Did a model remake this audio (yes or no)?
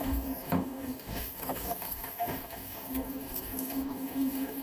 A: yes